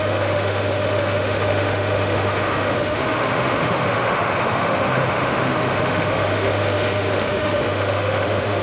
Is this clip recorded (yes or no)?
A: no